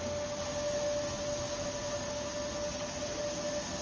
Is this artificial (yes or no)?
no